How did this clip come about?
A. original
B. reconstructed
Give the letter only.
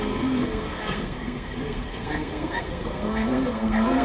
B